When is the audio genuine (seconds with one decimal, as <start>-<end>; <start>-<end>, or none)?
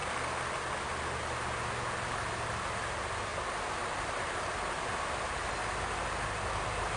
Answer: 0.0-7.0